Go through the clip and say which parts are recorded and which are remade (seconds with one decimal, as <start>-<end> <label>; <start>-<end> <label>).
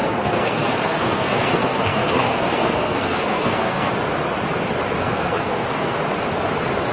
0.0-3.9 remade; 3.9-5.0 recorded; 5.0-6.0 remade; 6.0-6.9 recorded